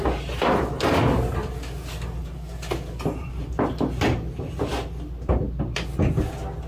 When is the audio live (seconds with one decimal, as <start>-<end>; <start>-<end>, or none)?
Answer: 0.0-6.7